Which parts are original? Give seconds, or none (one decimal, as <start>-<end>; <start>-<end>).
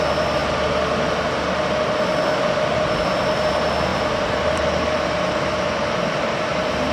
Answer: 0.0-3.9; 6.1-6.9